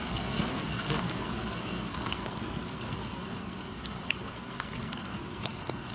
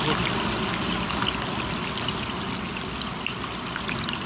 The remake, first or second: first